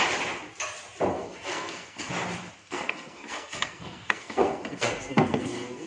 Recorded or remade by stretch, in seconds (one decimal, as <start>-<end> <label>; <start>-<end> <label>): 0.0-1.1 recorded; 1.1-2.1 remade; 2.1-2.6 recorded; 2.6-5.9 remade

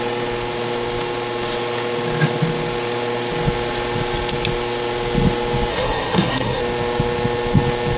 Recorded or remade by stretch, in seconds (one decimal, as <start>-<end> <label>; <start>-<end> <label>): 0.0-5.7 recorded; 5.7-6.6 remade; 6.6-8.0 recorded

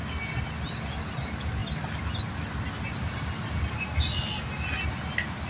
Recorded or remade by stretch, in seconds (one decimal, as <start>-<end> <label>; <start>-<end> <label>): 0.0-5.5 recorded